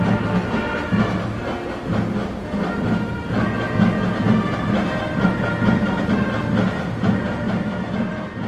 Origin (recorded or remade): recorded